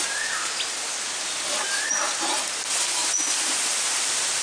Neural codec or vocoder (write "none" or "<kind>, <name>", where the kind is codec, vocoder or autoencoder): none